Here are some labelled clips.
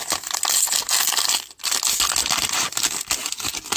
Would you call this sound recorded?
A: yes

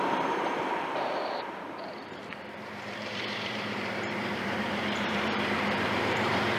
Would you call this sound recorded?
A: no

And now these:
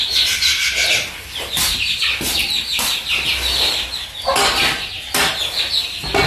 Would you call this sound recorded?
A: yes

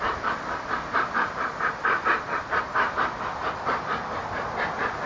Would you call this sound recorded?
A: no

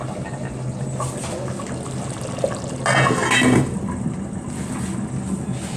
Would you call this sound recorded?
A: yes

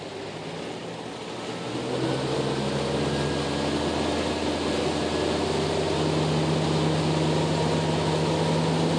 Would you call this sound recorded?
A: yes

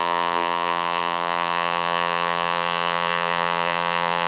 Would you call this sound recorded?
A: no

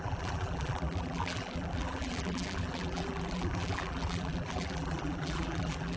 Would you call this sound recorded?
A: no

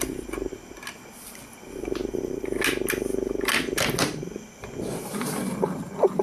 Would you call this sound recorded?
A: yes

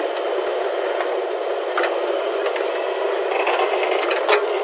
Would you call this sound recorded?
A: yes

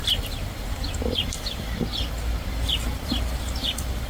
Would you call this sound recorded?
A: no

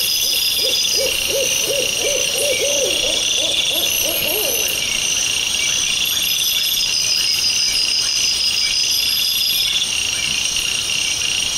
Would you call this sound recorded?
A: yes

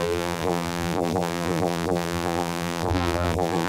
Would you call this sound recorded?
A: no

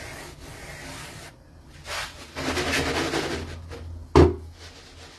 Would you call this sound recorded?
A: yes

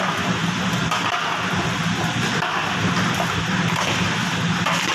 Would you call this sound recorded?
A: yes